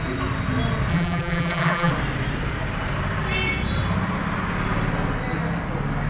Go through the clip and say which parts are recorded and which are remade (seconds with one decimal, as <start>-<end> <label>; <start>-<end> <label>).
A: 0.0-0.9 recorded; 0.9-1.9 remade; 1.9-6.1 recorded